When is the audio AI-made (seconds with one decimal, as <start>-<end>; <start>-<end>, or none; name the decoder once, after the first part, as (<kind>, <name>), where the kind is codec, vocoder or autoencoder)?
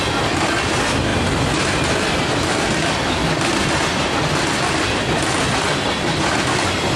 none